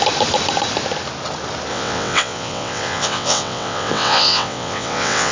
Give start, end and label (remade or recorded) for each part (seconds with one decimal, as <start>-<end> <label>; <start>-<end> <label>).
0.0-1.7 recorded; 1.7-5.3 remade